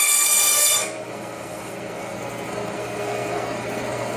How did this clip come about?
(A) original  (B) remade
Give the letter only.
B